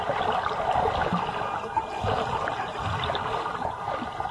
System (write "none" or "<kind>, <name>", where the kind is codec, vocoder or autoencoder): none